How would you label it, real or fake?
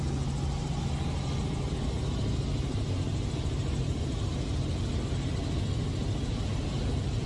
real